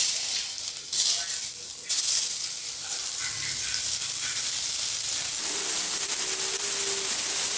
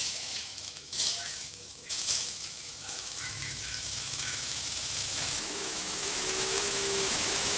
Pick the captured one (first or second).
first